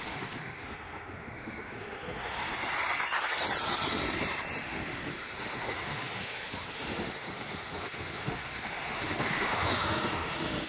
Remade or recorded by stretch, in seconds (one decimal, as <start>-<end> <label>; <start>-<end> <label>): 0.0-2.5 remade; 2.5-4.6 recorded; 4.6-10.7 remade